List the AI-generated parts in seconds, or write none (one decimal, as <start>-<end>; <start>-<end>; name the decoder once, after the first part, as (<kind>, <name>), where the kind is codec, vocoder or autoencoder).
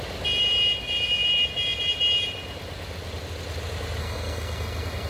4.0-5.1 (codec, SNAC)